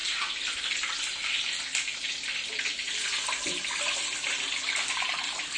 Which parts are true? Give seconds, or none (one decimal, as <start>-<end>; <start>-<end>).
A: 0.0-5.6